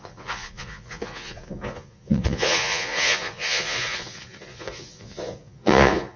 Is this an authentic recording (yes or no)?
no